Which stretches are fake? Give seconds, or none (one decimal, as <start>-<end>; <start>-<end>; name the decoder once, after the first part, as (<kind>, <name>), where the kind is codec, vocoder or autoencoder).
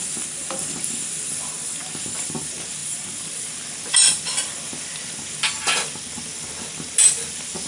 none